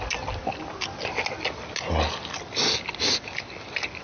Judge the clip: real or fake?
real